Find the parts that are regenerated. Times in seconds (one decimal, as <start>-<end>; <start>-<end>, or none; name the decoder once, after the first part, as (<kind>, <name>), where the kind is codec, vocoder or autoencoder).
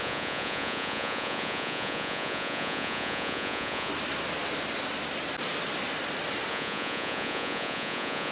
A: 0.0-3.9 (vocoder, Vocos); 6.5-8.3